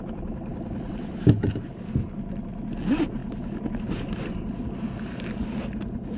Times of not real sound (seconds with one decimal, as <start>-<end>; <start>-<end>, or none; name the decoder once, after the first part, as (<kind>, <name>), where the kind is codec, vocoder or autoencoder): none